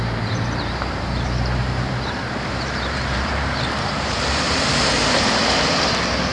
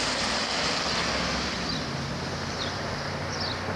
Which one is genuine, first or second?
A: second